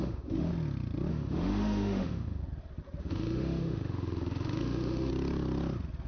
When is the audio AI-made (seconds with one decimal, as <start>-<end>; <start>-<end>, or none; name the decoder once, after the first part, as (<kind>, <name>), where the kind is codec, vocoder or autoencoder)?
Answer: 0.0-0.5 (autoencoder, DAC-VAE); 1.1-2.4; 3.0-5.1